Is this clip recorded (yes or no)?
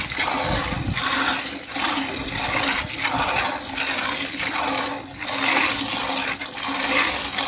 yes